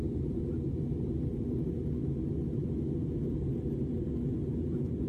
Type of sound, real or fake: real